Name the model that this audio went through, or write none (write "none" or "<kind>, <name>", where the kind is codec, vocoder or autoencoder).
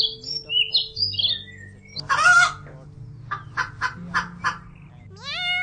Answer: none